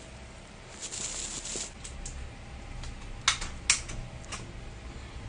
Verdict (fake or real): real